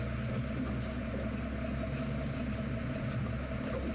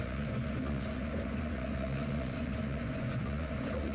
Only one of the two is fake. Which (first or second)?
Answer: second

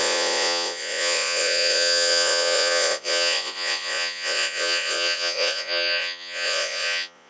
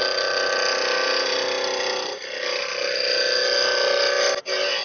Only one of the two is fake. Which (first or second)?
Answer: first